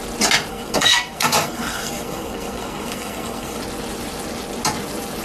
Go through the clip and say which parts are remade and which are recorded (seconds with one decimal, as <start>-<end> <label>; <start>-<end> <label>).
0.0-0.5 recorded; 0.5-3.6 remade; 3.6-5.2 recorded